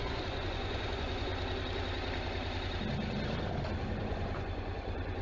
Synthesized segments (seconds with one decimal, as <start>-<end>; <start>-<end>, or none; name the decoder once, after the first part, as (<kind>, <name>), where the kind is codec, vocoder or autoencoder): 0.0-1.3 (vocoder, Vocos); 3.8-5.2